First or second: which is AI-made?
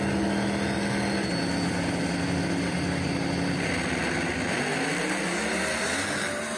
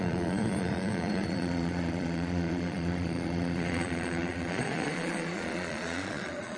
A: second